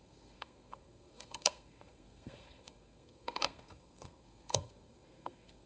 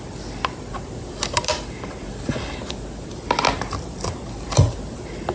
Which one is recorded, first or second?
second